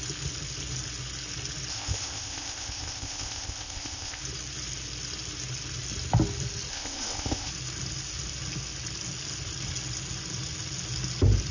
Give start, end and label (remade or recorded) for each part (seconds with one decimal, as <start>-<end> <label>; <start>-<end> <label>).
0.0-1.7 recorded; 1.7-4.2 remade; 4.2-6.7 recorded; 6.7-7.5 remade; 7.5-11.5 recorded